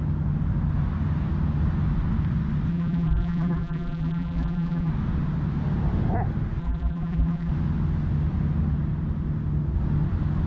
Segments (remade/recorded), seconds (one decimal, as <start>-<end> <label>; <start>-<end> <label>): 0.0-2.7 recorded; 2.7-4.9 remade; 4.9-6.6 recorded; 6.6-7.5 remade; 7.5-10.5 recorded